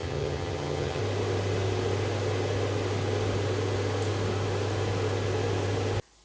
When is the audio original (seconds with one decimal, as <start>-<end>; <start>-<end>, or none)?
1.0-6.2

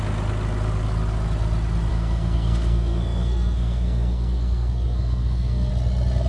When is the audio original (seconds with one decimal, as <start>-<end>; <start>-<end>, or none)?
0.0-1.9; 5.7-6.3